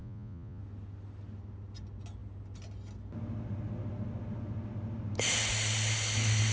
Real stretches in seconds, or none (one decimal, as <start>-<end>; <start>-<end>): 0.6-6.5